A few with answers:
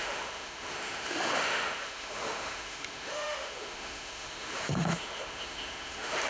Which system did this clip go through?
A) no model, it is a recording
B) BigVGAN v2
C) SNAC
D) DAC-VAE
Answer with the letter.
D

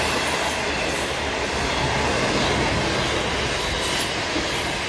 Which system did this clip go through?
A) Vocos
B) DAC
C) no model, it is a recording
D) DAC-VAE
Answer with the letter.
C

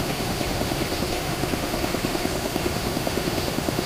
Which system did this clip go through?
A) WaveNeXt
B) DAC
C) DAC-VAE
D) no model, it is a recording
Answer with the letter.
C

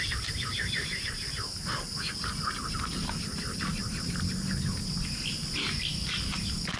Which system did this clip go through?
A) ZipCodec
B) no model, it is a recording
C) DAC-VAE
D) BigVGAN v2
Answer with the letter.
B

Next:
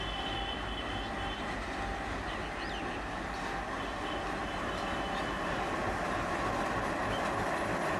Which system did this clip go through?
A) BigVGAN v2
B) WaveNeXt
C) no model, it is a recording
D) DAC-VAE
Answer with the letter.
C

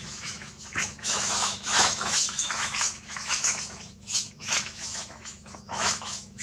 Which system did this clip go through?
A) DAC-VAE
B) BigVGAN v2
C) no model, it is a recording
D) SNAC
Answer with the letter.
A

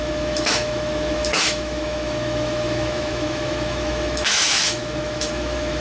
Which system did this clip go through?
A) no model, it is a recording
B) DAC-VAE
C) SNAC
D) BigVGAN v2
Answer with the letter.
B